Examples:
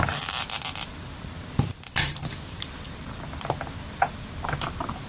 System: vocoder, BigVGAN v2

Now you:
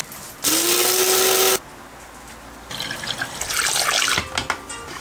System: none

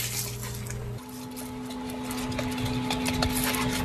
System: none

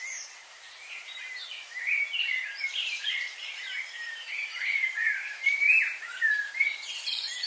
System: vocoder, BigVGAN v2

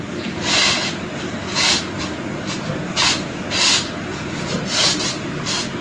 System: vocoder, BigVGAN v2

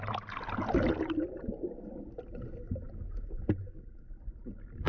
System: none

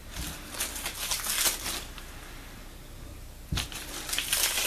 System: none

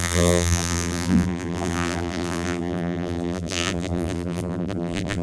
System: vocoder, BigVGAN v2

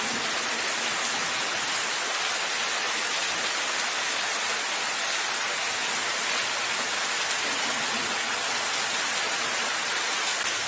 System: none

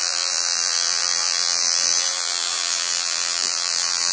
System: vocoder, BigVGAN v2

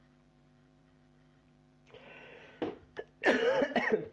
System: vocoder, BigVGAN v2